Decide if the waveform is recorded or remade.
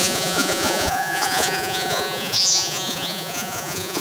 remade